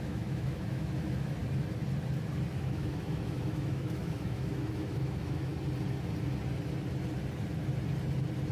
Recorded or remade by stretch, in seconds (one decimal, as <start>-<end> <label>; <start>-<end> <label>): 0.0-1.4 remade; 1.4-2.5 recorded; 2.5-5.5 remade; 5.5-8.5 recorded